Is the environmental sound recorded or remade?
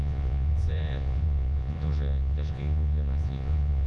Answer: remade